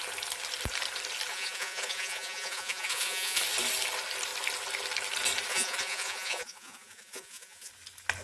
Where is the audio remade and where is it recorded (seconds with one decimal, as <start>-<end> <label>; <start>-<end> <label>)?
0.0-1.3 recorded; 1.3-3.4 remade; 3.4-5.5 recorded; 5.5-7.7 remade; 7.7-8.2 recorded